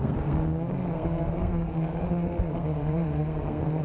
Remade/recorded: remade